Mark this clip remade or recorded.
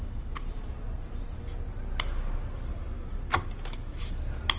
recorded